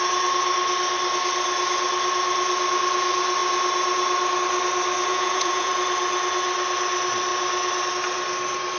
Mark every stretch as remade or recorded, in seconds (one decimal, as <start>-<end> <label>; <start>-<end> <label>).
0.0-5.1 recorded; 5.1-5.7 remade; 5.7-8.8 recorded